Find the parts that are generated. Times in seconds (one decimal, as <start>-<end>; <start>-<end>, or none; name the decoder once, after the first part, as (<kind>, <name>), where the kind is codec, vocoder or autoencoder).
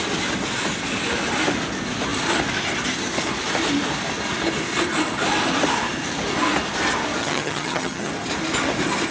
7.2-8.1 (vocoder, HiFi-GAN)